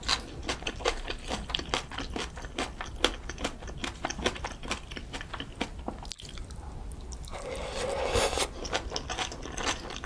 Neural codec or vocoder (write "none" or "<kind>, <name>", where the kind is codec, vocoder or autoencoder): none